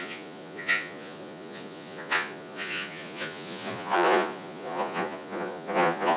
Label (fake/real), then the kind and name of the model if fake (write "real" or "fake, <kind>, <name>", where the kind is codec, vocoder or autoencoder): fake, vocoder, Vocos